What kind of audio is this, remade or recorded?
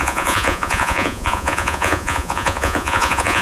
remade